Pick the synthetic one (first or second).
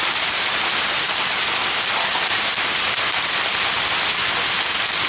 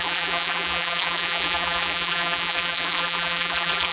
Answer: second